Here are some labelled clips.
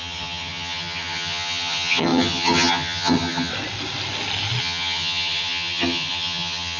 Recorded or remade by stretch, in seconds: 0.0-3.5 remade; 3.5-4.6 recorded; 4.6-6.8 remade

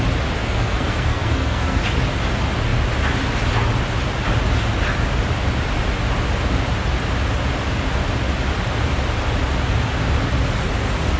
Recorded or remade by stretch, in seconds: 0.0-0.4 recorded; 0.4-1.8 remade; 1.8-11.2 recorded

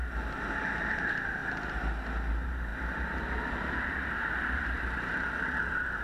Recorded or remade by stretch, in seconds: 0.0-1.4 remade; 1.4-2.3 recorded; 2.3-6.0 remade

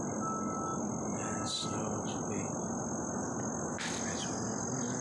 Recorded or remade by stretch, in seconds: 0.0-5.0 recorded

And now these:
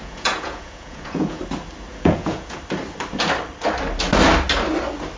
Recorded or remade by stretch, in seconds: 0.0-1.4 remade; 1.4-1.9 recorded; 1.9-2.6 remade; 2.6-5.2 recorded

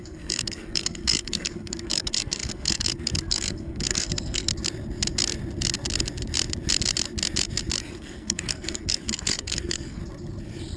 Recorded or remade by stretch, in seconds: 0.0-4.5 remade; 4.5-7.9 recorded; 7.9-10.0 remade; 10.0-10.8 recorded

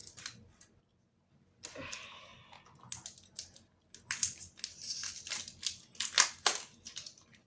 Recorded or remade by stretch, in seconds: 0.0-7.5 recorded